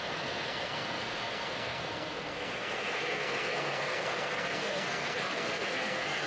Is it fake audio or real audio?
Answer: fake